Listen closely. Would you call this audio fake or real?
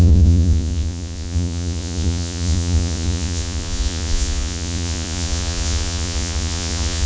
fake